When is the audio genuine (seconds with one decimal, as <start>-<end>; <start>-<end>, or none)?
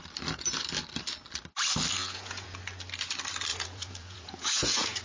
0.0-2.0; 2.6-3.5